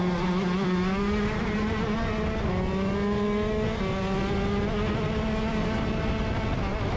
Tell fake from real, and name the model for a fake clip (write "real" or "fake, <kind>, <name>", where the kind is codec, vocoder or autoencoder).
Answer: real